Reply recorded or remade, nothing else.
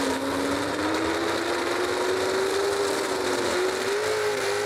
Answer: recorded